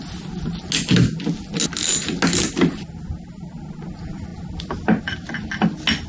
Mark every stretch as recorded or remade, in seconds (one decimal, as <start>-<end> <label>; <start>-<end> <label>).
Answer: 0.0-6.1 recorded

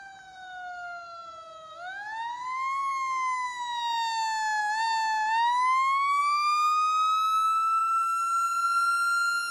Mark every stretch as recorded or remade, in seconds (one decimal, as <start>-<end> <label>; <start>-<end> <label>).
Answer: 0.0-9.5 recorded

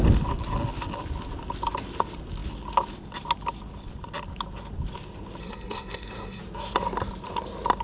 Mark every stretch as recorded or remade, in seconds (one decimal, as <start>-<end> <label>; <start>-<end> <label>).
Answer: 0.0-5.4 recorded; 5.4-6.4 remade; 6.4-7.8 recorded

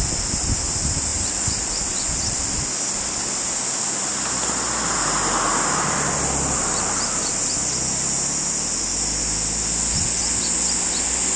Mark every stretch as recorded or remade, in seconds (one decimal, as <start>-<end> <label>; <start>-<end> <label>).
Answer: 0.0-1.1 recorded; 1.1-1.7 remade; 1.7-11.4 recorded

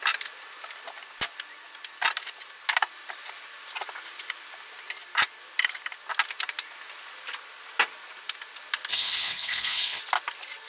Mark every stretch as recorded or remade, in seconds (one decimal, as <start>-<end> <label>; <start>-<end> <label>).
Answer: 0.0-8.9 recorded; 8.9-10.0 remade; 10.0-10.7 recorded